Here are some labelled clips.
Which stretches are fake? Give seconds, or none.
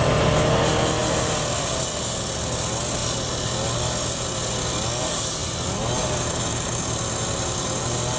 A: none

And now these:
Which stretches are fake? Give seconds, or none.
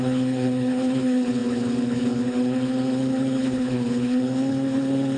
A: 0.0-5.2 (codec, HILCodec)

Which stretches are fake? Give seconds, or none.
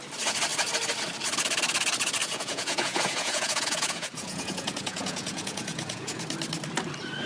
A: 2.2-6.2 (vocoder, Vocos)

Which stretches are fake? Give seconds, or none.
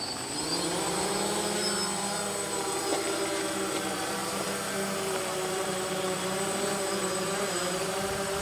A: 0.0-1.1 (vocoder, BigVGAN v2); 2.5-2.9; 3.7-8.4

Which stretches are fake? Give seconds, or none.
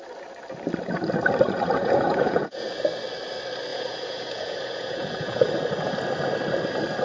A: 1.8-2.7 (vocoder, Vocos); 3.7-5.5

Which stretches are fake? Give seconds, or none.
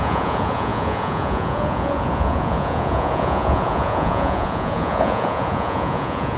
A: 0.0-6.4 (vocoder, Vocos)